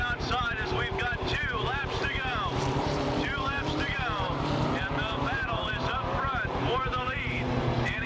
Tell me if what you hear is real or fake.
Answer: fake